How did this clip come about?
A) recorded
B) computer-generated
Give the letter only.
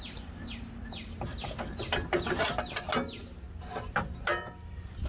A